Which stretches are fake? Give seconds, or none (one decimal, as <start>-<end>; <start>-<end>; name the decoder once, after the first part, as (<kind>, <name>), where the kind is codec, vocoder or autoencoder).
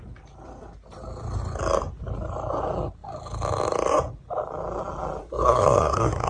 5.2-6.3 (codec, SNAC)